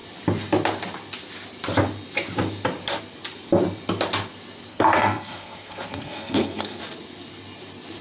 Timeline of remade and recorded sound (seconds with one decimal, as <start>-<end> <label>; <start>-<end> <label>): 0.0-4.7 recorded; 4.7-6.8 remade; 6.8-8.0 recorded